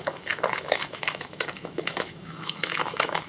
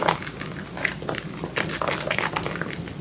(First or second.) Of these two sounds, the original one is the second